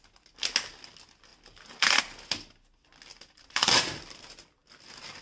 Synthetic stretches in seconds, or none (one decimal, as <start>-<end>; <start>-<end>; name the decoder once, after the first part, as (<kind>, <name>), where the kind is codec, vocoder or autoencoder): 1.3-2.0 (vocoder, BigVGAN v2); 3.1-4.0